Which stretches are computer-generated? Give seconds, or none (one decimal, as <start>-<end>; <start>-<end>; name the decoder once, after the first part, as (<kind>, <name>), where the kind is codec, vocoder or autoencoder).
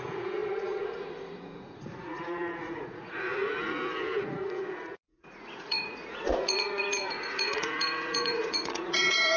0.0-9.4 (vocoder, Vocos)